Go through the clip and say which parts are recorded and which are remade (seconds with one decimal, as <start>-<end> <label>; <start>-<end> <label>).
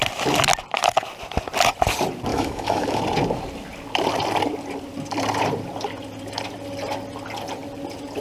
0.0-2.3 recorded; 2.3-3.0 remade; 3.0-8.2 recorded